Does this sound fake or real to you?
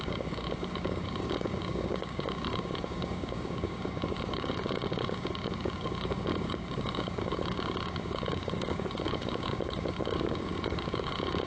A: fake